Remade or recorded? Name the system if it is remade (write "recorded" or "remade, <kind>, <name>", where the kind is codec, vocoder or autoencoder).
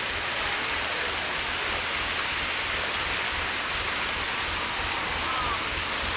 recorded